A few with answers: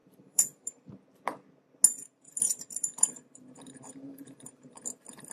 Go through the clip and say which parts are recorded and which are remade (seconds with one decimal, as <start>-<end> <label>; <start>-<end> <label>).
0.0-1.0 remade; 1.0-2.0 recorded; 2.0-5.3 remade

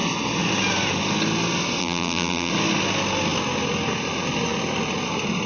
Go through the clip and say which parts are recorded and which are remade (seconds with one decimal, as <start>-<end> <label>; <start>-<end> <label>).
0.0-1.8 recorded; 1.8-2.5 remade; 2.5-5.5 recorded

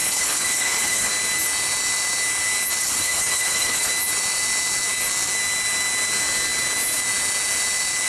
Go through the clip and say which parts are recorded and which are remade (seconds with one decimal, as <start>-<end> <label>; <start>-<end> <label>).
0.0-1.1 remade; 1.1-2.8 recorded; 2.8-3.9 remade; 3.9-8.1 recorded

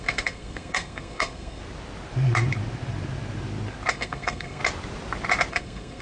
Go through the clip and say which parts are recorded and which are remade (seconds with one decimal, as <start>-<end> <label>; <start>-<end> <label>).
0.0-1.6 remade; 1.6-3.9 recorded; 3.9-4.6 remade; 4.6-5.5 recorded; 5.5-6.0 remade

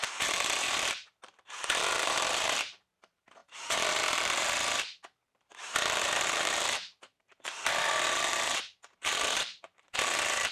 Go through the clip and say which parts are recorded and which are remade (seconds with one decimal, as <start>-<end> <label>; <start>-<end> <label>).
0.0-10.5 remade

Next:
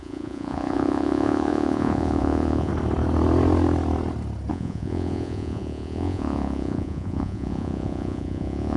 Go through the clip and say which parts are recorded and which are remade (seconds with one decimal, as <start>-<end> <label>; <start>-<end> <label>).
0.0-2.7 remade; 2.7-4.5 recorded; 4.5-8.8 remade